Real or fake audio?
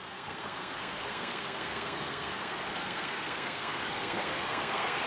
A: fake